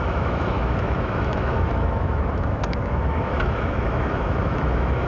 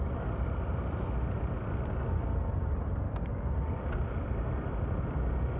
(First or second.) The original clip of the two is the second